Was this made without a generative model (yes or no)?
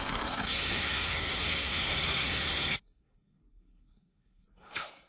no